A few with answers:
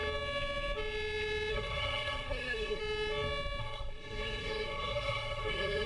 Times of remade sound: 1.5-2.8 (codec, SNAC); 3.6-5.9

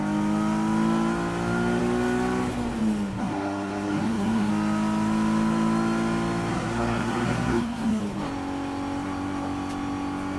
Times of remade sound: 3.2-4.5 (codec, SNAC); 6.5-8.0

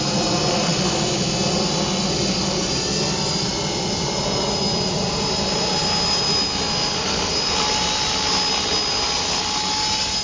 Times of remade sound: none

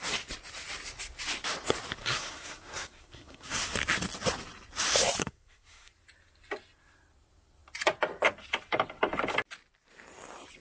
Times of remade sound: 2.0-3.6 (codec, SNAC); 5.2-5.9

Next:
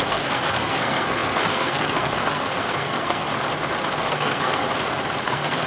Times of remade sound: 0.0-3.3 (codec, SNAC); 4.0-4.6; 5.2-5.7

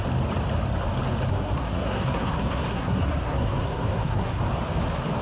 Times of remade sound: 1.3-4.4 (codec, SNAC)

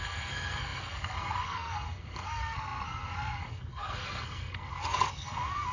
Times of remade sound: 0.0-5.7 (codec, SNAC)

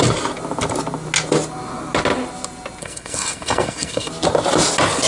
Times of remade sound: 2.8-4.1 (codec, SNAC)